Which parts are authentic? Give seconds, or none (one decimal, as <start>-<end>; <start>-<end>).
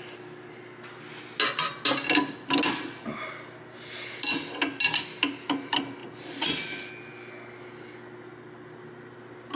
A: 0.0-9.6